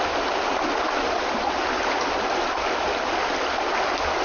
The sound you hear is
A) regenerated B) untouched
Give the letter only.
B